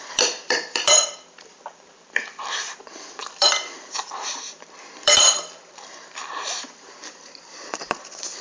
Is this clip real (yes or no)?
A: no